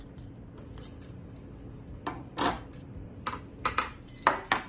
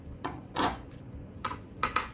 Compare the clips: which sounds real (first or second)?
first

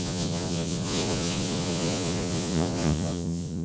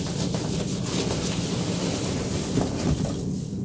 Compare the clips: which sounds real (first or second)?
second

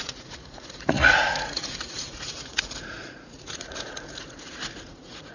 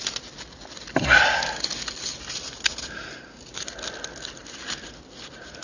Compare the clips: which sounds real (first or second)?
second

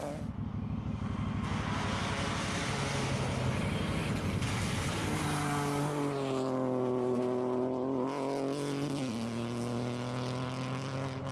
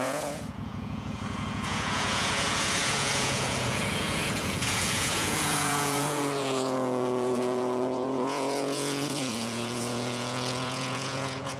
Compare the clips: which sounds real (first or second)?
first